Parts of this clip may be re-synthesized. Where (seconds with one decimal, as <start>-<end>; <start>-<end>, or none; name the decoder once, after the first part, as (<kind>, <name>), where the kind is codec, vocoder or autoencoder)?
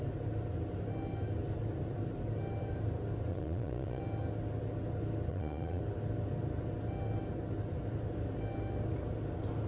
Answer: 3.3-4.0 (vocoder, Vocos); 5.3-5.8